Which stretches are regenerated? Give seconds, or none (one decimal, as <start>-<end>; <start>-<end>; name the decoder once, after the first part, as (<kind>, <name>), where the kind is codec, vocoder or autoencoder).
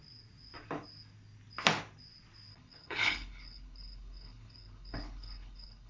2.5-5.9 (codec, HILCodec)